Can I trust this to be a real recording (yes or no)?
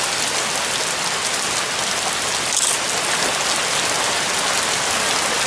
yes